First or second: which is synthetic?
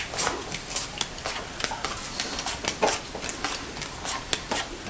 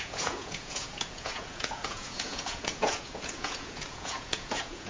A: second